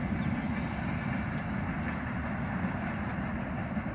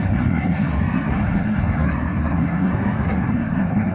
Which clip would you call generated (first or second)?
second